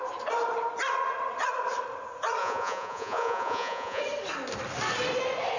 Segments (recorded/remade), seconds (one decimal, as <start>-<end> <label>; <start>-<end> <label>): 0.0-2.4 recorded; 2.4-4.0 remade; 4.0-5.6 recorded